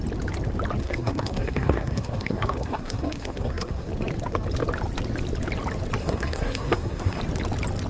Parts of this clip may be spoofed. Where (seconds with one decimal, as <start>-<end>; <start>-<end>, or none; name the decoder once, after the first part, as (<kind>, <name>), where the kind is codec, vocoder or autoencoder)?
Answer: 0.8-3.9 (codec, SNAC); 6.0-7.2